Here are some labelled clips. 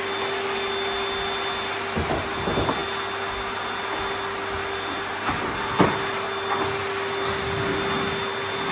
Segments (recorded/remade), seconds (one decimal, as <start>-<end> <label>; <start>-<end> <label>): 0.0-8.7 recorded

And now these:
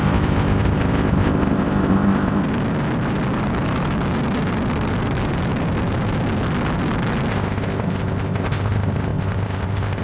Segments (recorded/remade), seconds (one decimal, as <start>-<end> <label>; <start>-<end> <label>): 0.0-2.4 remade; 2.4-7.3 recorded; 7.3-10.0 remade

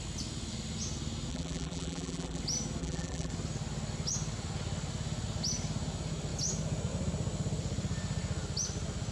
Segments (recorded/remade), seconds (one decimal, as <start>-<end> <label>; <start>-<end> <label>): 0.0-1.3 recorded; 1.3-2.4 remade; 2.4-2.8 recorded; 2.8-3.3 remade; 3.3-9.1 recorded